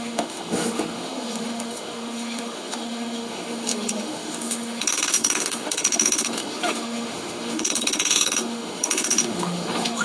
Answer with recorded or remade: remade